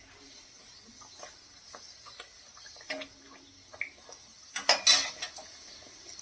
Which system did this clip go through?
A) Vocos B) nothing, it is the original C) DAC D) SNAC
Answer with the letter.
B